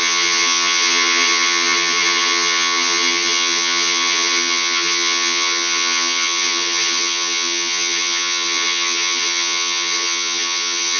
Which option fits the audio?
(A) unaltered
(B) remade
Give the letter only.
B